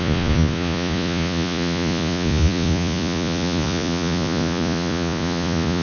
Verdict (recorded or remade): remade